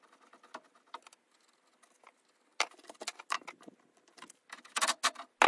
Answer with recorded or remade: recorded